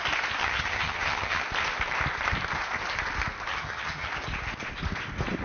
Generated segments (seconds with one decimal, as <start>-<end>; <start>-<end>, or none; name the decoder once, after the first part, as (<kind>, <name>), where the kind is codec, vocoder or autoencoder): 0.4-1.4 (vocoder, HiFi-GAN); 3.5-4.1